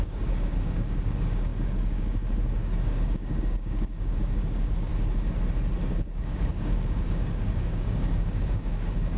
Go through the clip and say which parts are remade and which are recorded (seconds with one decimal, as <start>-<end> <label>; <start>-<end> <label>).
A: 0.0-4.9 remade; 4.9-5.8 recorded; 5.8-9.2 remade